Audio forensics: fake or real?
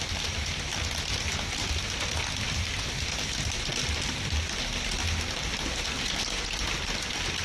fake